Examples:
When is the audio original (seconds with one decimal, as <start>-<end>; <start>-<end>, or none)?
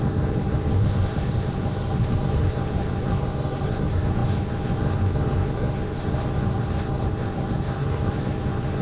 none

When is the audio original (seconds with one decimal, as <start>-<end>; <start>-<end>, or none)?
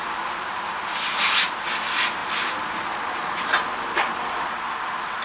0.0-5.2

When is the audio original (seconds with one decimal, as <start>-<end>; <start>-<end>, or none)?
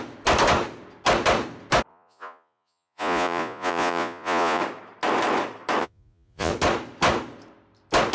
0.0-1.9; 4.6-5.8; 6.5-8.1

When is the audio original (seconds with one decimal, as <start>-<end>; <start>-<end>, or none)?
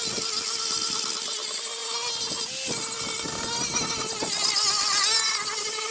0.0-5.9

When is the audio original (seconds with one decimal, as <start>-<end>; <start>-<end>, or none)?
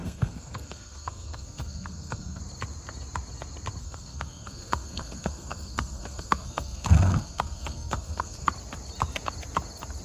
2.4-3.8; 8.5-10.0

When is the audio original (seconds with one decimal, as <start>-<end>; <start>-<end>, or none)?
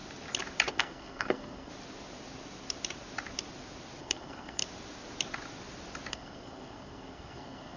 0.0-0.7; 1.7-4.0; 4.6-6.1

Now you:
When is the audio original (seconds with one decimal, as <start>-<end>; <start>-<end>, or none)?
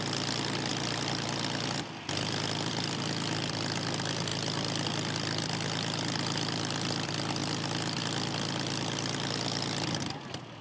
0.0-10.6